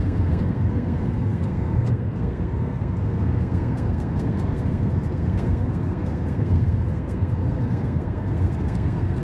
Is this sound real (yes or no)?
no